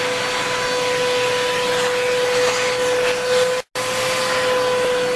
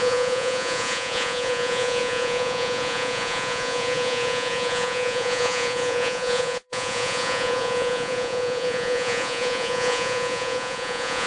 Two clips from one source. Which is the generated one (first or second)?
second